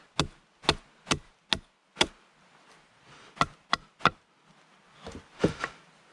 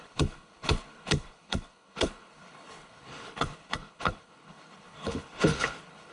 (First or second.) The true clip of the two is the first